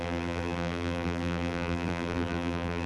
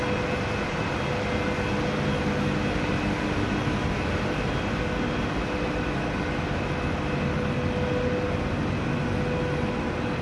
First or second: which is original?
second